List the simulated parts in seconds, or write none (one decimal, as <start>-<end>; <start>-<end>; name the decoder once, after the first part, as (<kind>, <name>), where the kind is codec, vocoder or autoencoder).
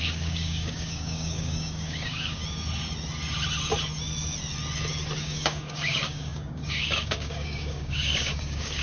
0.0-2.4 (codec, DAC); 5.2-8.8